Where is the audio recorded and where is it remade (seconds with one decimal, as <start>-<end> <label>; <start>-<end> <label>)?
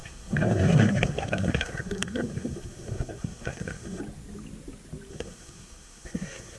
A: 0.0-4.0 remade; 4.0-5.1 recorded; 5.1-6.6 remade